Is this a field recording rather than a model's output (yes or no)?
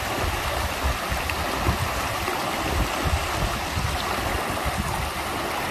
yes